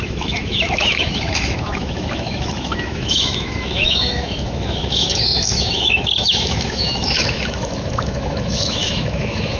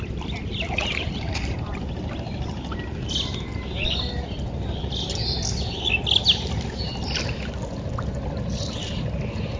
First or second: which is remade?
first